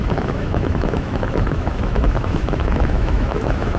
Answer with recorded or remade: remade